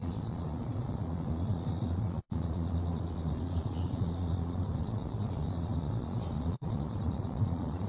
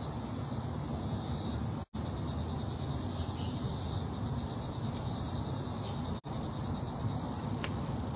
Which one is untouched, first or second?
second